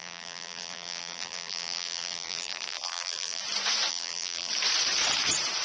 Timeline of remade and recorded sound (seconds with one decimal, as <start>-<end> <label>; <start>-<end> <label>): 0.0-3.4 remade; 3.4-3.9 recorded; 3.9-4.5 remade; 4.5-5.6 recorded